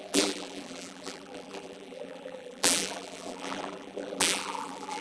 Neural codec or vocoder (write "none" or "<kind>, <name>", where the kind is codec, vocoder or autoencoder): vocoder, BigVGAN v2